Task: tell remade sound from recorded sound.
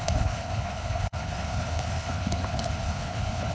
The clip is remade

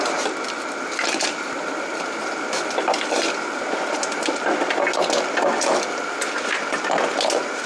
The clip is recorded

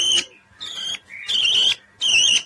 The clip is recorded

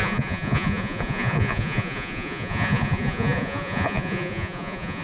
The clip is remade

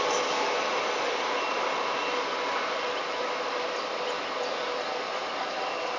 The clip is recorded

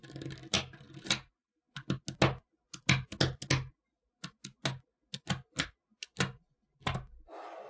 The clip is recorded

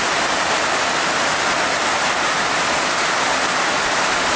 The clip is recorded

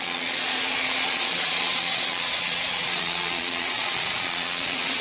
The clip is remade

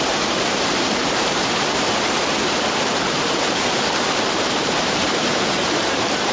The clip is remade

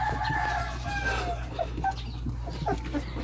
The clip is recorded